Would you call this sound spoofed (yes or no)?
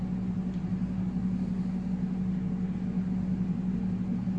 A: no